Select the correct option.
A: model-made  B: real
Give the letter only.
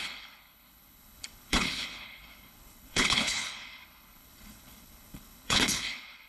A